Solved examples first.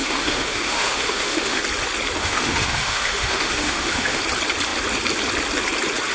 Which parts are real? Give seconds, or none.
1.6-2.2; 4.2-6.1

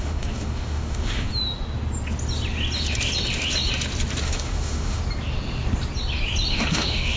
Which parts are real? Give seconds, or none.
1.3-4.2; 5.0-6.5

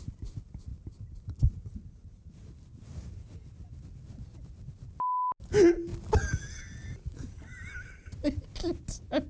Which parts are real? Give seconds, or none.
0.0-9.3

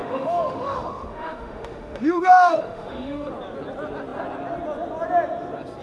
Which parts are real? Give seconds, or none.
3.3-5.8

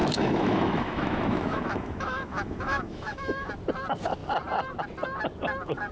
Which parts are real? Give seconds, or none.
3.5-5.9